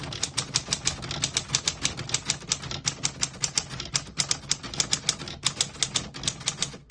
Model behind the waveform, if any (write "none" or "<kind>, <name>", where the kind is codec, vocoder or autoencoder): none